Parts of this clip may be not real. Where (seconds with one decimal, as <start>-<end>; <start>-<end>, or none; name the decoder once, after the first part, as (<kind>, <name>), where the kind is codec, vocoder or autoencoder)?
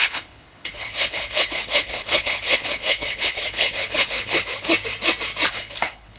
0.0-4.7 (codec, HILCodec); 5.5-6.2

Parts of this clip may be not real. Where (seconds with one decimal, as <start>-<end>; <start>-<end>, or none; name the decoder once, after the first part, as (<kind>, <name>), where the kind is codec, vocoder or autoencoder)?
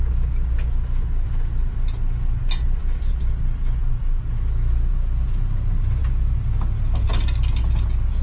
none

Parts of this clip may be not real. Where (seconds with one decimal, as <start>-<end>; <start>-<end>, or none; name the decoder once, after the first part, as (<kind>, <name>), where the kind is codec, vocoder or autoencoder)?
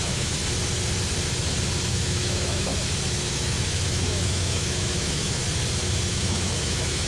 0.0-0.4 (autoencoder, DAC-VAE); 1.9-2.7; 3.3-5.4; 6.1-7.1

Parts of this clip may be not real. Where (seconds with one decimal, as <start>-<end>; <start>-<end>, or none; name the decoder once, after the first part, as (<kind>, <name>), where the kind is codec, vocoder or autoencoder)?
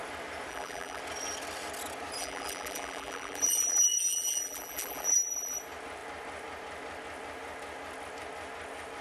0.5-1.0 (vocoder, BigVGAN v2); 2.2-5.6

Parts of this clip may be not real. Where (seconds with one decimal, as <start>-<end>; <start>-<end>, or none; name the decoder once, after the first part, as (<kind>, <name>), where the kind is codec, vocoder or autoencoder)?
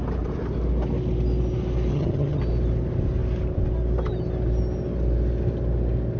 1.9-2.4 (vocoder, HiFi-GAN)